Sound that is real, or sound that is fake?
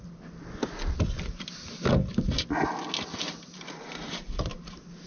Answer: real